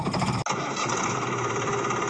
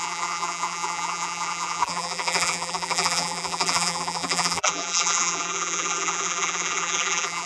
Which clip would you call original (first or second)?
first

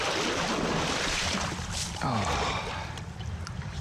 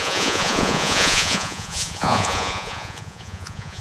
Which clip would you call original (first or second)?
first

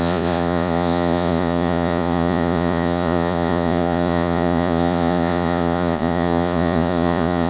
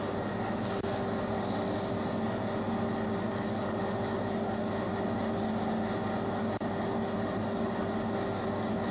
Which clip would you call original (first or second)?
second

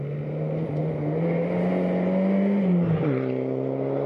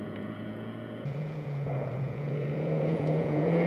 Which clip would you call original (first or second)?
first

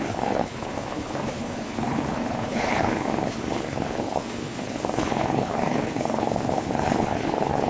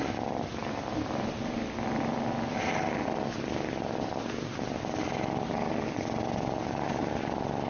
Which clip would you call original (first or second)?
second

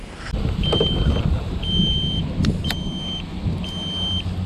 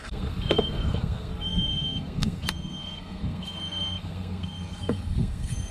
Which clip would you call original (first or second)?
first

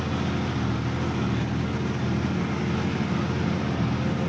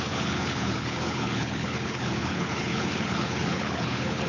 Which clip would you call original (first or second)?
first